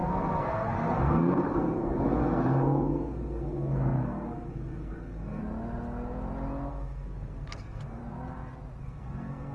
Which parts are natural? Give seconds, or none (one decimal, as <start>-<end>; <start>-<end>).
5.4-6.7; 8.0-8.8